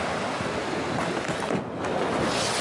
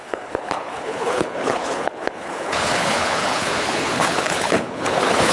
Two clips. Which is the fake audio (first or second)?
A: second